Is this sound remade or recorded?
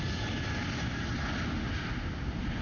recorded